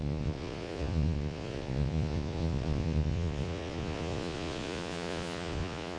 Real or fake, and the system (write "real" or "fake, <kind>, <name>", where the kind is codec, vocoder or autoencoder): fake, vocoder, Vocos